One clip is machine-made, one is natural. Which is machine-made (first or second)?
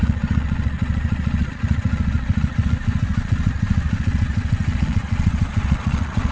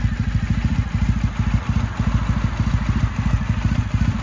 first